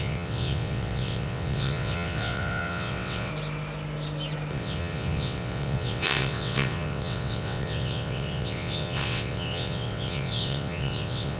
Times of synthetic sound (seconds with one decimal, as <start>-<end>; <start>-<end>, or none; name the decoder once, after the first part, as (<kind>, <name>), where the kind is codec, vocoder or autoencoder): 0.0-3.3 (vocoder, WaveNeXt); 4.5-11.4